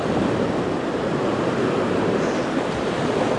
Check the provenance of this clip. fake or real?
real